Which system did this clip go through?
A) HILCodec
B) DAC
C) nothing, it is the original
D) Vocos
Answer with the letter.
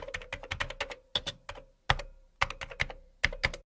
C